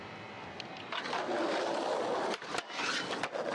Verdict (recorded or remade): recorded